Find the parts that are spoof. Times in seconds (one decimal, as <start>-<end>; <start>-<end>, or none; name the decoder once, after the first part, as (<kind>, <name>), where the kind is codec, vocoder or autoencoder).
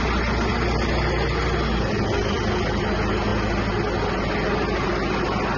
none